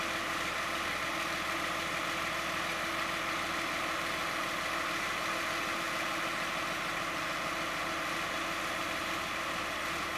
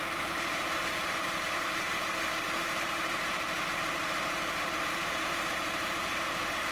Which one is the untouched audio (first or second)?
first